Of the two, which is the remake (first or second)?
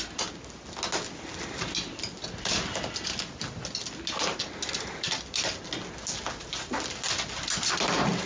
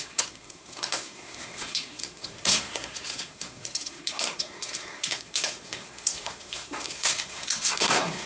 second